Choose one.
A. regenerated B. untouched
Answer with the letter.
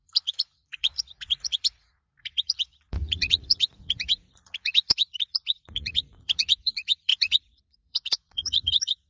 A